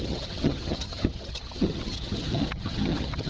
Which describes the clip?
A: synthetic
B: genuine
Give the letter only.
A